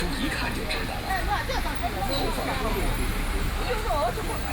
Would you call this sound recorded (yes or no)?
yes